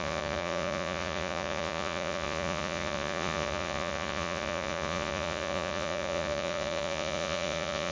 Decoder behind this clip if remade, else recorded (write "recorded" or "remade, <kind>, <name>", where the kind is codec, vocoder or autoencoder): remade, vocoder, Vocos